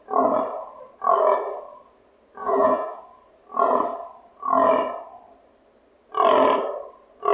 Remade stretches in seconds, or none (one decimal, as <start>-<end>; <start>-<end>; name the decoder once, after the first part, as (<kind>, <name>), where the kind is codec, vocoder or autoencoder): 2.4-3.0 (vocoder, Vocos)